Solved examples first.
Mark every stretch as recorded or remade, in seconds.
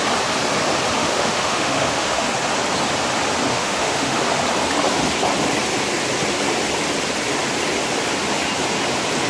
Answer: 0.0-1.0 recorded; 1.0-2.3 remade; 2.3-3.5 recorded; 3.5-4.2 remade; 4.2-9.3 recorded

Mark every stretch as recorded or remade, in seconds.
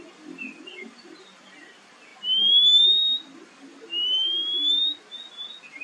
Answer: 0.0-2.1 remade; 2.1-5.3 recorded; 5.3-5.8 remade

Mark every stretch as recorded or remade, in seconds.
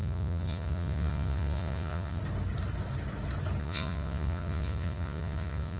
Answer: 0.0-2.2 remade; 2.2-3.6 recorded; 3.6-5.8 remade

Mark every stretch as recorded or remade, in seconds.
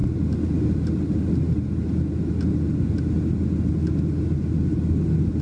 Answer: 0.0-5.4 recorded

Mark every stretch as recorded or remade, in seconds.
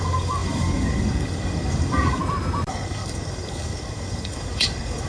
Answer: 0.0-2.2 remade; 2.2-2.7 recorded; 2.7-5.1 remade